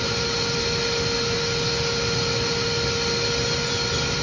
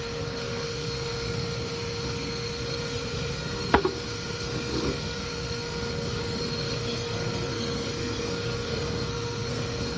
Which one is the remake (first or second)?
second